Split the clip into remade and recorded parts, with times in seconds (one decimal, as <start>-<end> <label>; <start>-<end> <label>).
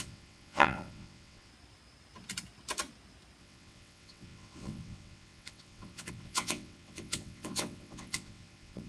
0.0-1.5 remade; 1.5-3.4 recorded; 3.4-8.9 remade